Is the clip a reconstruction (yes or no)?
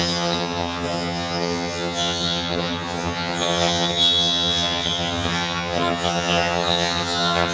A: yes